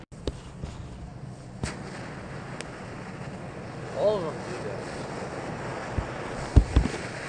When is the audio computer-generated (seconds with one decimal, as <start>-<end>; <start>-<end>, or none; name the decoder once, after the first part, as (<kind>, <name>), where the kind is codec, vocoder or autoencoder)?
none